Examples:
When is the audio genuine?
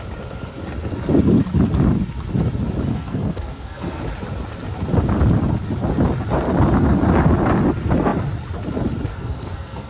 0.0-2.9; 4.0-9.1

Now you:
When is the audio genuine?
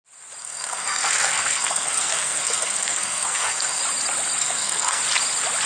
0.0-0.4; 3.8-4.4; 5.0-5.7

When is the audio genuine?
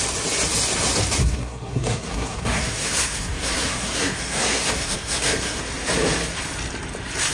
0.0-1.2; 5.6-7.3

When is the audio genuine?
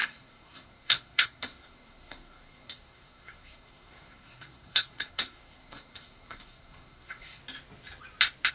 7.4-8.5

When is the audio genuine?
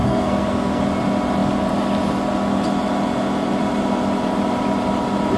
0.8-5.4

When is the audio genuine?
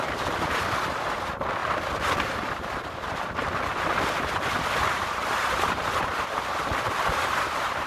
0.0-7.9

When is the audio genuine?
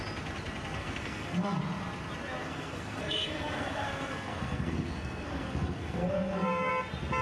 0.0-0.8; 1.6-2.4; 6.7-7.2